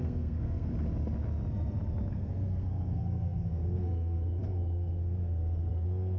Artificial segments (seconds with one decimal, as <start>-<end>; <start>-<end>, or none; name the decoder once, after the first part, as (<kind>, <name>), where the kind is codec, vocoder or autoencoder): 0.0-0.7 (codec, SNAC); 2.1-6.2